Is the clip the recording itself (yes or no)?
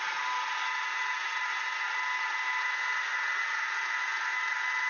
yes